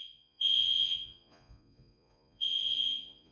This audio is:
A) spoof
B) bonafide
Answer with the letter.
A